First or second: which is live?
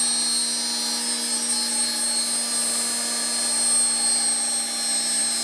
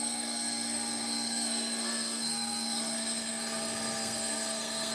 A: first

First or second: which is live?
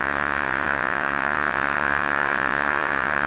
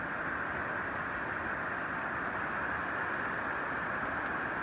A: second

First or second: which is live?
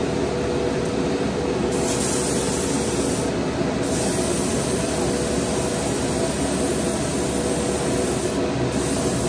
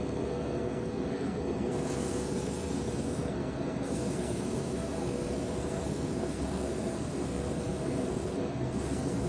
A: first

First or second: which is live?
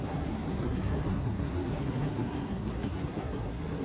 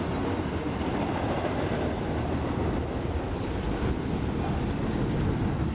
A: second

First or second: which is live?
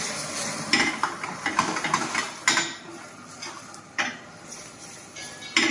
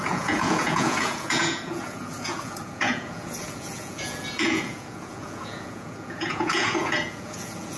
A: first